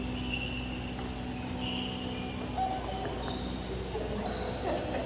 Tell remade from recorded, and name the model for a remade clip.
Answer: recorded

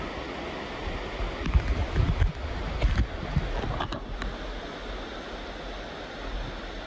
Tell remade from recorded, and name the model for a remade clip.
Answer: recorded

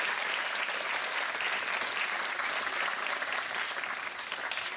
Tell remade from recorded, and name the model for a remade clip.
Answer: recorded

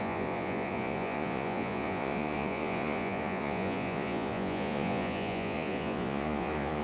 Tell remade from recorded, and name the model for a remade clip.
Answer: remade, vocoder, Vocos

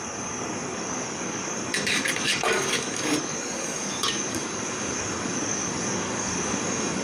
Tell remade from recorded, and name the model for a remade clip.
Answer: remade, codec, DAC